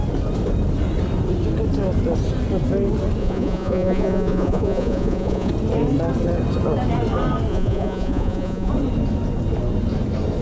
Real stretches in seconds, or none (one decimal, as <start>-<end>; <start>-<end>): 0.0-3.2; 5.5-7.5; 8.7-10.4